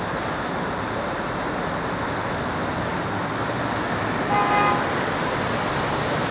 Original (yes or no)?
yes